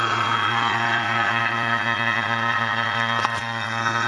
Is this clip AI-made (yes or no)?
yes